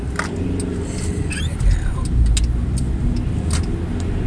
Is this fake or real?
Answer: real